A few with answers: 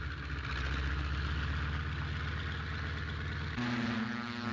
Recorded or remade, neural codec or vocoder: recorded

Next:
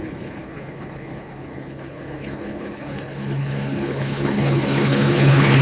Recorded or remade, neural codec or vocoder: remade, codec, HILCodec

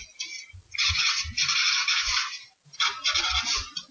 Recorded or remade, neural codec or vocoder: recorded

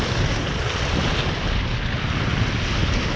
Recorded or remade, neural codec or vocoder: recorded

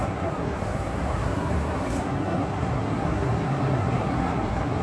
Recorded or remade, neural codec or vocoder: remade, codec, SNAC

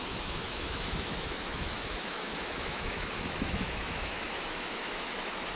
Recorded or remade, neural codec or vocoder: remade, autoencoder, DAC-VAE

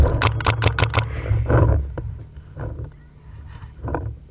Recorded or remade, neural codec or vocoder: recorded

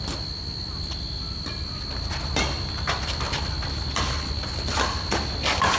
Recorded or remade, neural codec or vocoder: recorded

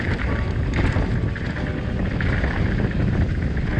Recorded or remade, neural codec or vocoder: recorded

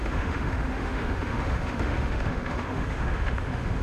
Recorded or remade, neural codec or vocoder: remade, autoencoder, DAC-VAE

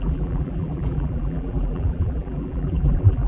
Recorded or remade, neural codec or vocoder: remade, vocoder, BigVGAN v2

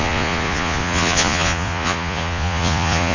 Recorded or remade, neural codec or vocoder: remade, vocoder, Vocos